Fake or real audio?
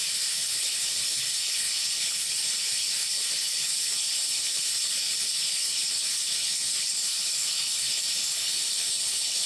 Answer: fake